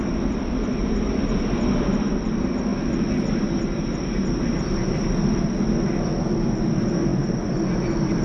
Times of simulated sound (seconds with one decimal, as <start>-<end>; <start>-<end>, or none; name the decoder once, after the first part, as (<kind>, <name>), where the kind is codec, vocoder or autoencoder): none

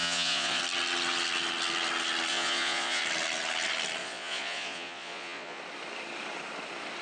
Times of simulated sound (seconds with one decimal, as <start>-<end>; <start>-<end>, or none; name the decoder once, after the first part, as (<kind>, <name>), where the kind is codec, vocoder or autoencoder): 0.0-0.6 (vocoder, Vocos); 2.3-3.0; 4.0-5.6

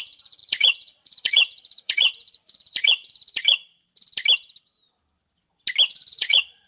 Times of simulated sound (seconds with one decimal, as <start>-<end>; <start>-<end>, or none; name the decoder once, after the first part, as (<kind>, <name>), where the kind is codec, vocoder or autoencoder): 0.0-3.6 (vocoder, Vocos); 6.1-6.7

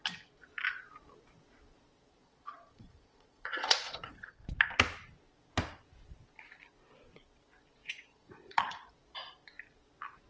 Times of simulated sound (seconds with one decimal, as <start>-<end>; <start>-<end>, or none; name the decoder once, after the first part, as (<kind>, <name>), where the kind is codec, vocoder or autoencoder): 2.2-4.5 (vocoder, Vocos); 7.8-8.9

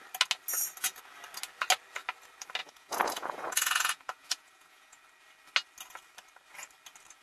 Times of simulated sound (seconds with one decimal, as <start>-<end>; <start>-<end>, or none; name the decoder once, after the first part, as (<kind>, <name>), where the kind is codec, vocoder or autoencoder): 2.6-5.0 (vocoder, Vocos)

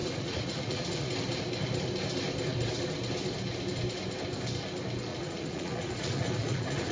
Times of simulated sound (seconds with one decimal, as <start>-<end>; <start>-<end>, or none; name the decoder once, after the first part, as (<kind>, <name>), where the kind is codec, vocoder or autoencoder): 0.0-1.1 (vocoder, Vocos); 5.1-6.9

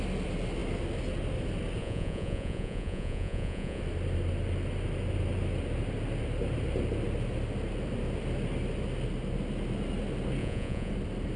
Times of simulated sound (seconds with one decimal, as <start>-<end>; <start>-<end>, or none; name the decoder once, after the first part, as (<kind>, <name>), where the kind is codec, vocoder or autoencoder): 1.8-3.8 (vocoder, Vocos); 10.4-10.9